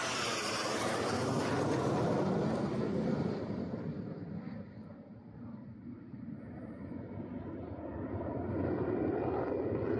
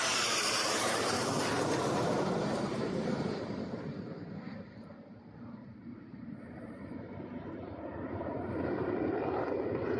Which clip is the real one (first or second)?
first